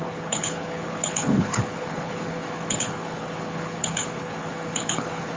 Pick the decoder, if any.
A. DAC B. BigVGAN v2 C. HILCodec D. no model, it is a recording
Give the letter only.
C